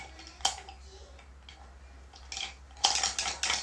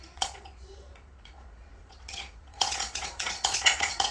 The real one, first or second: first